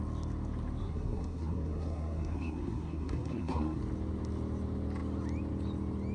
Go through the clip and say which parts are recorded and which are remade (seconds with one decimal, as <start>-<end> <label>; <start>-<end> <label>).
0.0-0.8 recorded; 0.8-3.8 remade; 3.8-6.1 recorded